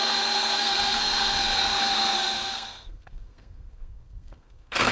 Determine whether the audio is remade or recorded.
remade